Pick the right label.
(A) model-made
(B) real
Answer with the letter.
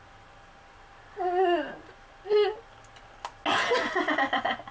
B